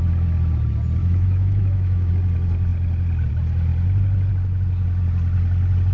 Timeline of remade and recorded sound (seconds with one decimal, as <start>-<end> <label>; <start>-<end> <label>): 0.0-1.0 recorded; 1.0-2.1 remade; 2.1-5.9 recorded